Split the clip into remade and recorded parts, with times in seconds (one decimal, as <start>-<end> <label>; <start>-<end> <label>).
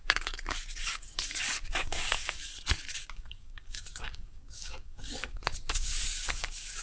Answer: 0.0-2.5 remade; 2.5-3.1 recorded; 3.1-6.8 remade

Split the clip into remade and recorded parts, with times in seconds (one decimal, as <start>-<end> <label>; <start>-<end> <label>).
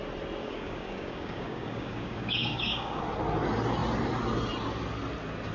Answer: 0.0-0.4 recorded; 0.4-3.0 remade; 3.0-5.5 recorded